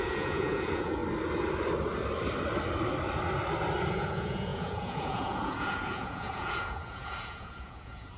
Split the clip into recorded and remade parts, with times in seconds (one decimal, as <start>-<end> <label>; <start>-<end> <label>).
0.0-1.0 remade; 1.0-3.9 recorded; 3.9-8.2 remade